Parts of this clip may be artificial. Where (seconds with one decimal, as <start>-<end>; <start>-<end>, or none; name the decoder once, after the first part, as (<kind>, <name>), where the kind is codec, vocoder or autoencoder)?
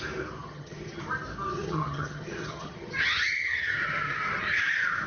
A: 0.4-1.0 (vocoder, HiFi-GAN); 1.5-4.6